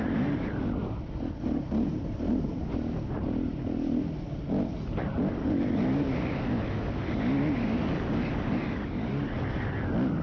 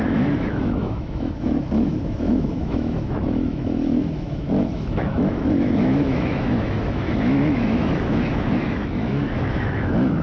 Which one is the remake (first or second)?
second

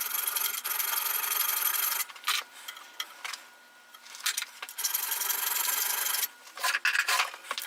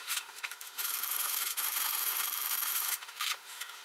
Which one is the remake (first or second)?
second